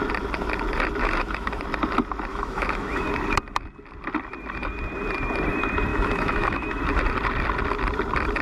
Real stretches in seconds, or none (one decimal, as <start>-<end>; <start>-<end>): 0.0-1.0; 1.6-2.3; 3.1-5.9; 6.8-8.4

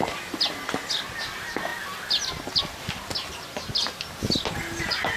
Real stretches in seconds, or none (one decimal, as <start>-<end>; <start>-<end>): 0.0-5.2

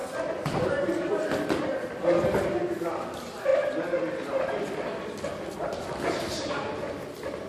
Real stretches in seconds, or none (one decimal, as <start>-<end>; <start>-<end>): 0.0-7.5

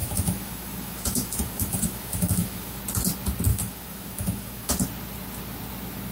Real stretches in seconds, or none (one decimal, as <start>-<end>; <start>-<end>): 2.8-3.5; 4.7-6.1